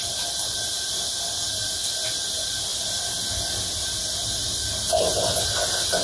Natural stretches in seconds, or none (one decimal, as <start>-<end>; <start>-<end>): 0.0-6.0